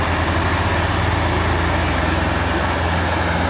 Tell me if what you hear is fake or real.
real